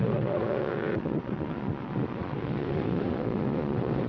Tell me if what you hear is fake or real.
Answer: fake